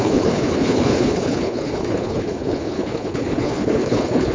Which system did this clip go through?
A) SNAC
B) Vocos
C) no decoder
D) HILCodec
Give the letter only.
D